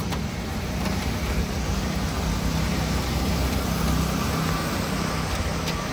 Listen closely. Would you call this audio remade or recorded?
recorded